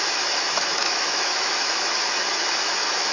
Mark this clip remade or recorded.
remade